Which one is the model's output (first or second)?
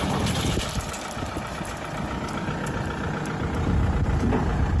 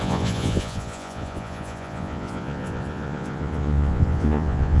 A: second